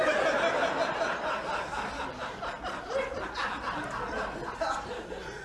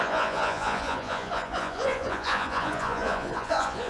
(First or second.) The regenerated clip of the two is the second